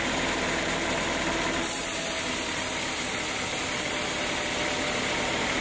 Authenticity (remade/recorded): recorded